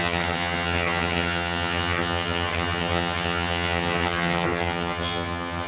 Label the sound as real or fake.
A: fake